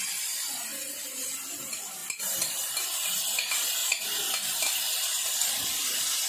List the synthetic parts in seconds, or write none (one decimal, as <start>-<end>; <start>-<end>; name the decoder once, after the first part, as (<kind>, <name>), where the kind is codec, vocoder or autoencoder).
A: 2.0-2.7 (vocoder, BigVGAN v2)